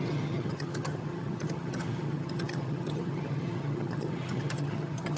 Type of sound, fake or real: fake